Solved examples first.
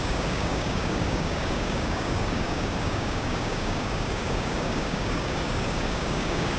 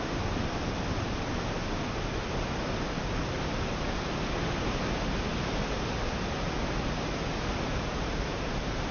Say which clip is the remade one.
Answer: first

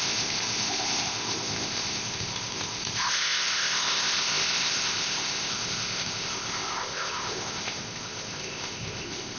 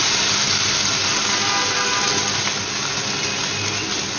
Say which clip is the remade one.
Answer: first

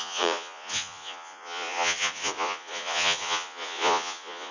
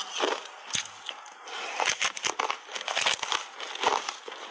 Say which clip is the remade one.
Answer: first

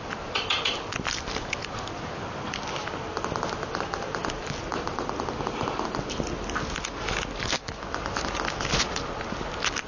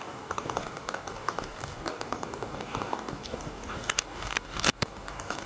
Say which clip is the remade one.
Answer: second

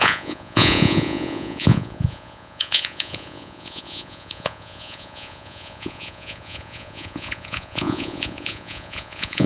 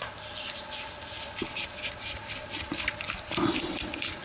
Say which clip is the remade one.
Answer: first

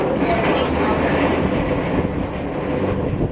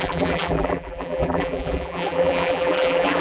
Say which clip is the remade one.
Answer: second